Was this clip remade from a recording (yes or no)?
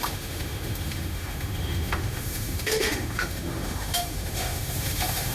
yes